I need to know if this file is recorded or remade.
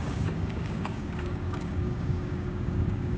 remade